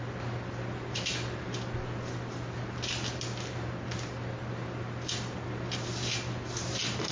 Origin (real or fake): real